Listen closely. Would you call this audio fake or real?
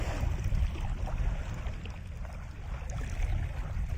real